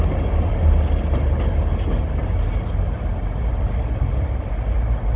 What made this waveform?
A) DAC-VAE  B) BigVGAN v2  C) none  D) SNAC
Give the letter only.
C